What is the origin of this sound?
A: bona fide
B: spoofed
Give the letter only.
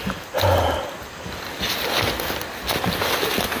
A